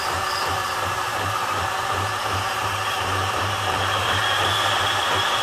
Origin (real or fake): fake